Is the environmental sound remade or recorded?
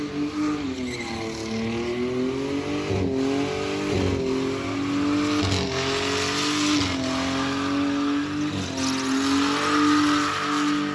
recorded